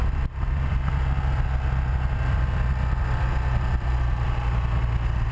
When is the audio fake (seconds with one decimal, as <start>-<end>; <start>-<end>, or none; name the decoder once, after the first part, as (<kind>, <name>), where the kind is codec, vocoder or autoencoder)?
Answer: none